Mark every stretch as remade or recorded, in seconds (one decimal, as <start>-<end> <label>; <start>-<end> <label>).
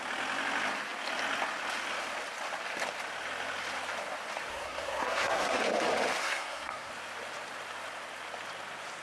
0.0-4.5 recorded; 4.5-5.6 remade; 5.6-6.2 recorded; 6.2-6.9 remade; 6.9-9.0 recorded